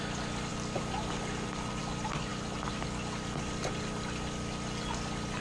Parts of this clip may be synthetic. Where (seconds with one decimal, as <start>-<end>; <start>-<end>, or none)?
none